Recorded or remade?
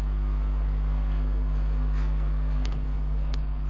remade